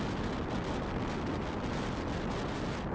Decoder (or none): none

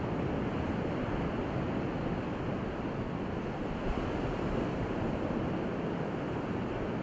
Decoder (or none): none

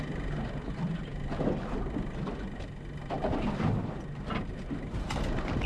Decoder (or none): none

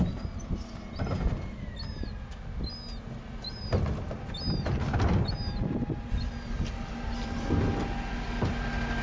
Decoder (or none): none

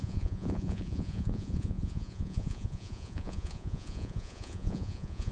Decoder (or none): vocoder, Vocos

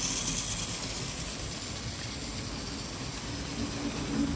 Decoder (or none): none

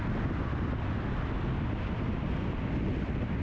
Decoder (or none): none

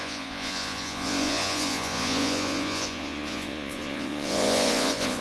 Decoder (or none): vocoder, Vocos